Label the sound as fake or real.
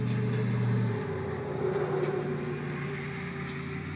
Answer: real